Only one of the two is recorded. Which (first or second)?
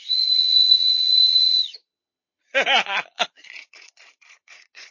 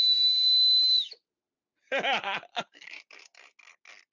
second